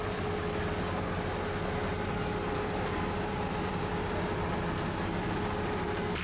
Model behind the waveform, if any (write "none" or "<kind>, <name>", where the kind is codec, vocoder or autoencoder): none